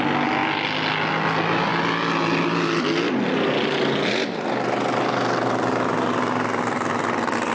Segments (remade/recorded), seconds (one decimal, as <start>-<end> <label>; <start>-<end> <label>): 0.0-7.5 recorded